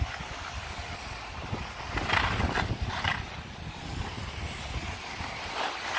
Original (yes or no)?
yes